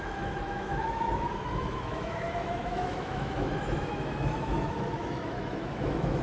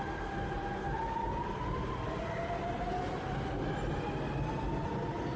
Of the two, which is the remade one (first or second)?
first